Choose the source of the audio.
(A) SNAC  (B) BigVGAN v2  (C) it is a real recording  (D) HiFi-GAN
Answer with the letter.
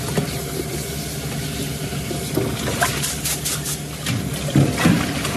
C